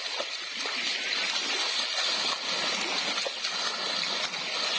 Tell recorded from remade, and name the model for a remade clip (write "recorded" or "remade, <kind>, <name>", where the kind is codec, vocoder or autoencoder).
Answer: recorded